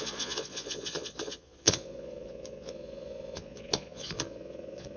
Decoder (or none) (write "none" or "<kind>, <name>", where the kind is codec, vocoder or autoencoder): vocoder, Vocos